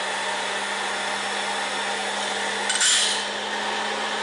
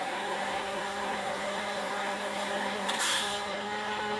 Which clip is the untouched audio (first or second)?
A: first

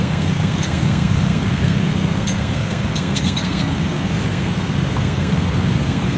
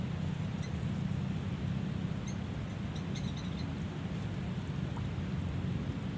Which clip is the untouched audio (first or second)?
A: second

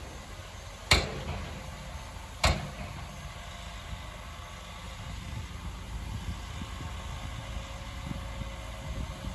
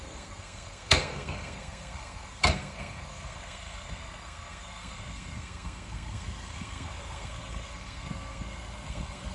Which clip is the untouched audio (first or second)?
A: first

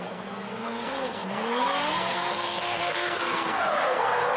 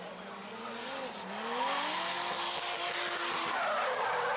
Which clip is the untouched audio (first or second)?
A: second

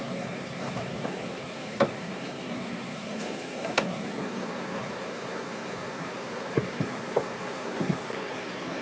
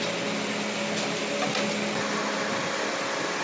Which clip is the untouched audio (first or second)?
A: second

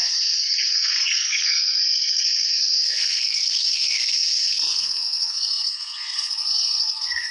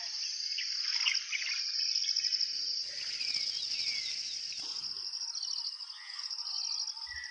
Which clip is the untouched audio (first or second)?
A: second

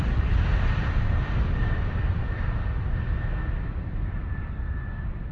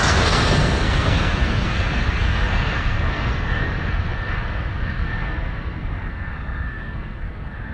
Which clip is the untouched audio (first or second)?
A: first